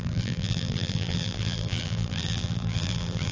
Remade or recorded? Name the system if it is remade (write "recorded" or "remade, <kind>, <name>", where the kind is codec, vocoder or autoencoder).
remade, vocoder, BigVGAN v2